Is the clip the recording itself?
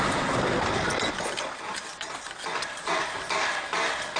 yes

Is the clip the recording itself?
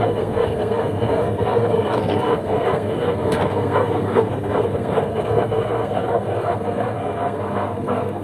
no